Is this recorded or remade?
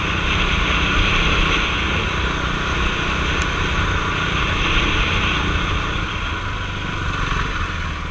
recorded